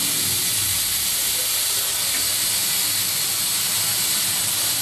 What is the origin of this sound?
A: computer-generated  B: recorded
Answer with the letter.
B